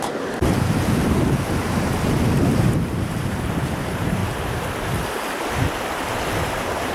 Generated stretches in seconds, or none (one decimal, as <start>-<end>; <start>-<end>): 0.0-4.2; 6.4-6.9